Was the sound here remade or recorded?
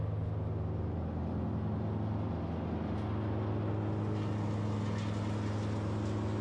recorded